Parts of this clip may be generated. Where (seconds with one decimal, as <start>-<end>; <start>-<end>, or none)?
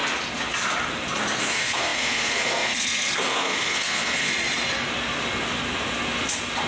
1.4-4.3